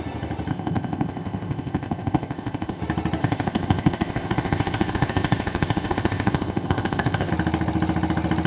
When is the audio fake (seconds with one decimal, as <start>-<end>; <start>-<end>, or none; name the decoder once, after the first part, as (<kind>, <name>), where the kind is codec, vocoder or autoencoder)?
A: 0.5-2.8 (codec, ZipCodec); 3.2-7.3